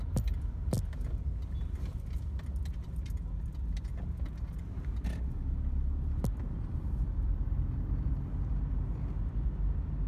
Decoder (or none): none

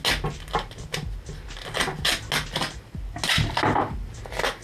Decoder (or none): none